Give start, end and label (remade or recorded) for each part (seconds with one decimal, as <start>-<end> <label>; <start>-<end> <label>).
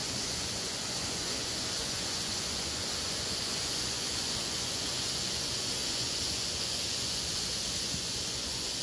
0.0-8.8 remade